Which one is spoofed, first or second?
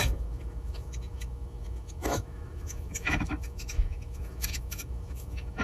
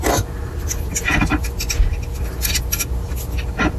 first